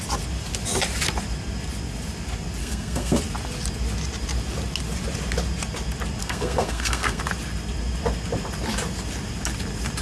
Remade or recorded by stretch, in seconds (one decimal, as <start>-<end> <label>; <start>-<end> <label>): 0.0-2.6 recorded; 2.6-3.2 remade; 3.2-6.2 recorded; 6.2-7.2 remade; 7.2-10.0 recorded